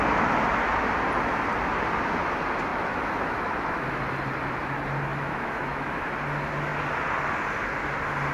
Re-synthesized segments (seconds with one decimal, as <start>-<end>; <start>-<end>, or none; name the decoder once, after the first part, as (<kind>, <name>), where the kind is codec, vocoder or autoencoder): 2.7-4.0 (autoencoder, DAC-VAE); 5.1-6.1